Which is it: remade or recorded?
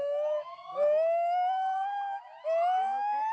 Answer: remade